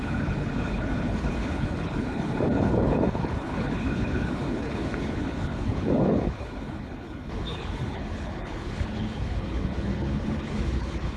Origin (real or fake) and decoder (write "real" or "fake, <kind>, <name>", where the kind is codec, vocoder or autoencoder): fake, codec, HILCodec